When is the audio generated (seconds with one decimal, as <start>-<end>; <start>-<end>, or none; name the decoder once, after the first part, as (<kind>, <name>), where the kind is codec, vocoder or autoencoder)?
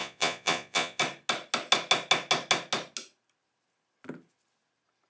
0.0-1.0 (vocoder, Vocos)